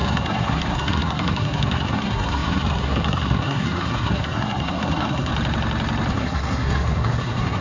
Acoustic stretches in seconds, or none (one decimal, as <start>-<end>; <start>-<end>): 5.3-6.1